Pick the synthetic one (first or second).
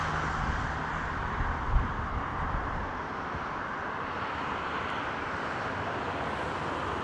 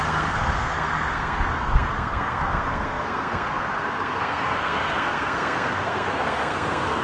second